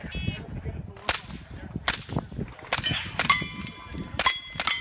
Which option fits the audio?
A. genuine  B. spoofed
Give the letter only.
A